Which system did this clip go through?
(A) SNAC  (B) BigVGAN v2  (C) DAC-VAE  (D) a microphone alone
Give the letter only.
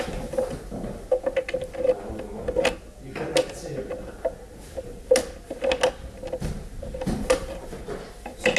D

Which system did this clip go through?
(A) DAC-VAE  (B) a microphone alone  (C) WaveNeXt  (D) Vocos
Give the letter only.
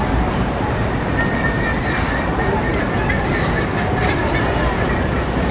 B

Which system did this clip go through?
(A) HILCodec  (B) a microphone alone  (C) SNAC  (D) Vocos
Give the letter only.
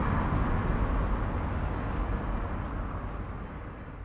B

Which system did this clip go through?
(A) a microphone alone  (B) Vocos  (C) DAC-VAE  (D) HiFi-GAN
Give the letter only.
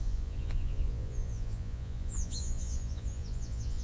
B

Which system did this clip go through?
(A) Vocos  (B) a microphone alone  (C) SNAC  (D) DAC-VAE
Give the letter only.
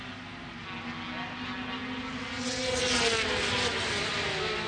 B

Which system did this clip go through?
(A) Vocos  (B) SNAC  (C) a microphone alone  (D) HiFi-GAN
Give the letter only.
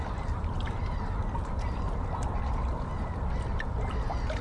C